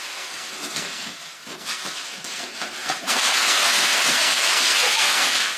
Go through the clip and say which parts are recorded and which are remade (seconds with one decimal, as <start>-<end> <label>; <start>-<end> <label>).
0.0-5.6 remade